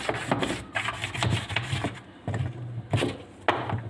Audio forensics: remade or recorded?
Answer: recorded